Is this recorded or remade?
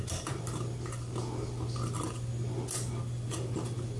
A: recorded